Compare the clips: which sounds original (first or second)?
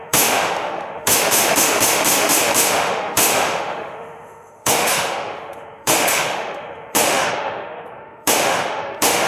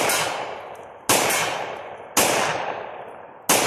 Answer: second